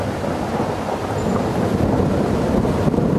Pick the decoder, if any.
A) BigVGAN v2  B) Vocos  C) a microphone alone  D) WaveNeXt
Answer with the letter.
C